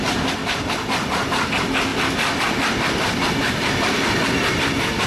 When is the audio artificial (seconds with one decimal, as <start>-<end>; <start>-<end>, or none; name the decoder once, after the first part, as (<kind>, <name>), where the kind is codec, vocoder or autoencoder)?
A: none